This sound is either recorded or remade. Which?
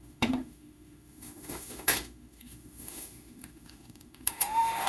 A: remade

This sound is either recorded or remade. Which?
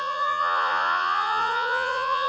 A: remade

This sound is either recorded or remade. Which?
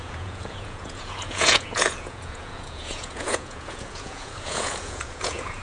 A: remade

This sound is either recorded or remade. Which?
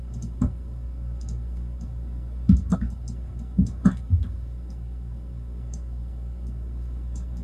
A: remade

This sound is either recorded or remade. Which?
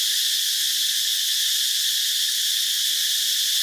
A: recorded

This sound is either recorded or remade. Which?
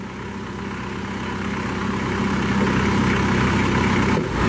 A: recorded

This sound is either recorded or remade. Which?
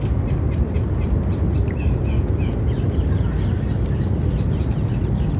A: recorded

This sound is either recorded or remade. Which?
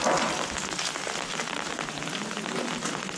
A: recorded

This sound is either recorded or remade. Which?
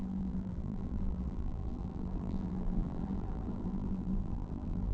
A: remade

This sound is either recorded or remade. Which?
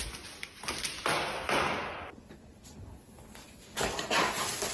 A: recorded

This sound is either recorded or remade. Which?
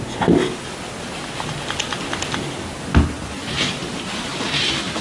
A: recorded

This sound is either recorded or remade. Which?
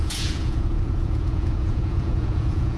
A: remade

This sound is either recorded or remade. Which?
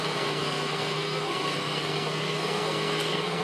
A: remade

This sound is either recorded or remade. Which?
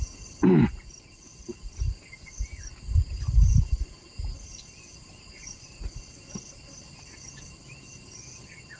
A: recorded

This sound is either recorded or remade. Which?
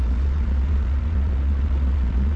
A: remade